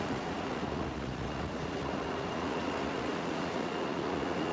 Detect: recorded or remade remade